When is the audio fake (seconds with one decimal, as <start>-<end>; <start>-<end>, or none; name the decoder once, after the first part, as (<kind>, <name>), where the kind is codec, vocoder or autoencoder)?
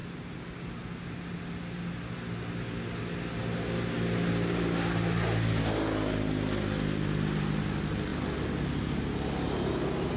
none